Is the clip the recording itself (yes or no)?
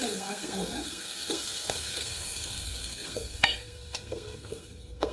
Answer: no